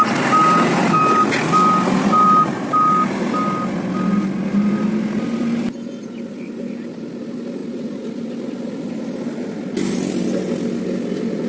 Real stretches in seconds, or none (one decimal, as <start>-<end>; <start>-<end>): 0.0-11.5